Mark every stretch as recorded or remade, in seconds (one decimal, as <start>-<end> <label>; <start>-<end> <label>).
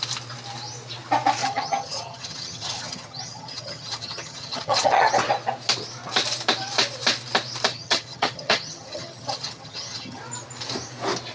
0.0-1.4 recorded; 1.4-5.1 remade; 5.1-7.7 recorded; 7.7-10.2 remade; 10.2-11.3 recorded